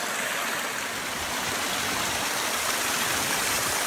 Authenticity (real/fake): real